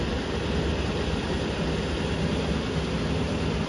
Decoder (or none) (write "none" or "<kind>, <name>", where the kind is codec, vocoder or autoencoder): none